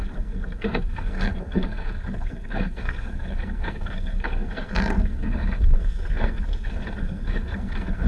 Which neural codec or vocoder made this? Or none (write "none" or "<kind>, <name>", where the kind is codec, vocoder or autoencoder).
codec, SNAC